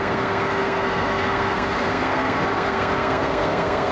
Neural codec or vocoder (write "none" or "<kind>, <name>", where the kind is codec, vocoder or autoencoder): codec, SNAC